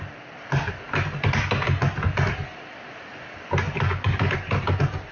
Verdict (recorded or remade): recorded